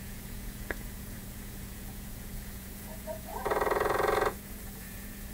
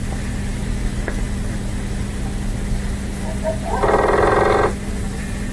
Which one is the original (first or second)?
second